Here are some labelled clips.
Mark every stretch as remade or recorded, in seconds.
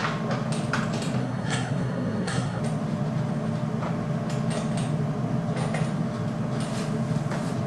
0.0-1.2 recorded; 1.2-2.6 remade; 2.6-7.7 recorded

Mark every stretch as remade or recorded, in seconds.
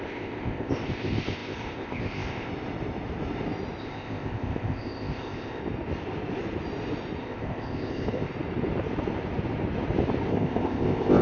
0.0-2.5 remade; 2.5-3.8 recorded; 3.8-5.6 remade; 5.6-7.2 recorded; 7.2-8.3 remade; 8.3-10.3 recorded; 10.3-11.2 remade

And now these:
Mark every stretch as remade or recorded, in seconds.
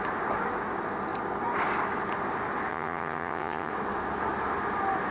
0.0-2.7 recorded; 2.7-3.7 remade; 3.7-5.1 recorded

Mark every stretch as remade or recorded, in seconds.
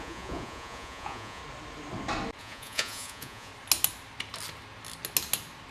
0.0-1.4 remade; 1.4-2.4 recorded; 2.4-3.5 remade; 3.5-5.7 recorded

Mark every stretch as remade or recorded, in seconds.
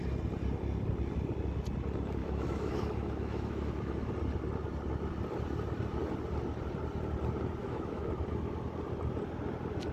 0.0-2.2 recorded; 2.2-4.1 remade; 4.1-7.6 recorded; 7.6-8.1 remade; 8.1-9.9 recorded